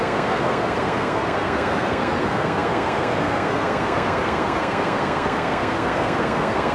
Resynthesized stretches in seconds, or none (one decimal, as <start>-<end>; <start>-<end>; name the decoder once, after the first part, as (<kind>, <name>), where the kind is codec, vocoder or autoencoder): 0.0-6.7 (codec, SNAC)